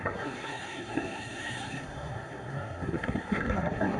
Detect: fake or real fake